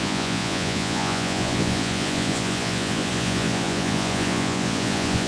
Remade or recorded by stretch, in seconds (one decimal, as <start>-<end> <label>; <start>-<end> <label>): 0.0-5.3 remade